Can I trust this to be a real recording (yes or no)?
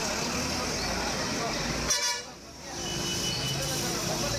yes